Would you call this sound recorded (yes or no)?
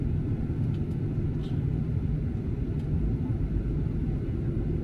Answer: no